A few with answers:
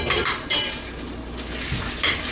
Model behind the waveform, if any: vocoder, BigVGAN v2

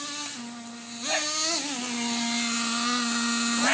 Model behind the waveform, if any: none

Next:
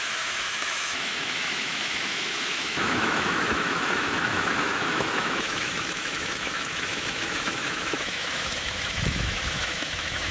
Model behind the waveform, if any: autoencoder, DAC-VAE